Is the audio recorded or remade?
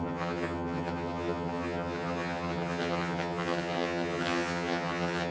remade